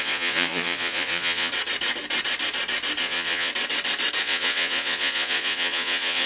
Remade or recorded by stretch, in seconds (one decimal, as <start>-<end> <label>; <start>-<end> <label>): 0.0-1.5 remade; 1.5-3.0 recorded; 3.0-3.5 remade; 3.5-4.2 recorded; 4.2-6.3 remade